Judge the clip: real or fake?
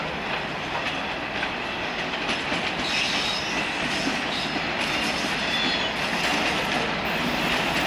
real